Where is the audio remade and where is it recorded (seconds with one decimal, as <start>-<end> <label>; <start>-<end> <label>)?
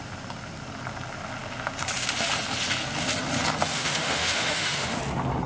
0.0-3.7 recorded; 3.7-5.0 remade; 5.0-5.5 recorded